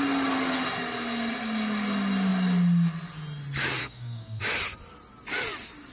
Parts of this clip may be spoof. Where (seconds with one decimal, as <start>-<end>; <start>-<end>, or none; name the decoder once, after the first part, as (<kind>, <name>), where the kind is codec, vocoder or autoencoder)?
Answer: 3.8-4.4 (codec, SNAC)